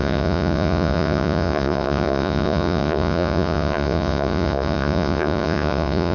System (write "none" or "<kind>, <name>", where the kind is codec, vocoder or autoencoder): vocoder, Vocos